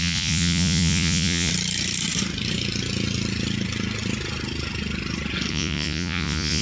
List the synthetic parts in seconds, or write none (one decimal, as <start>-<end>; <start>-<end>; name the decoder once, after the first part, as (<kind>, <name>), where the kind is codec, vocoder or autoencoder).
0.0-1.5 (vocoder, Vocos); 5.5-6.6